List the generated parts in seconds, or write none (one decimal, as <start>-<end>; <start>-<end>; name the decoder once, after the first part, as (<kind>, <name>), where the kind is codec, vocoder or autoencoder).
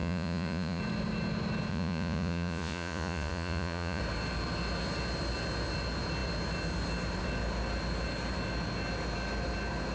0.0-0.8 (vocoder, Vocos); 1.7-4.0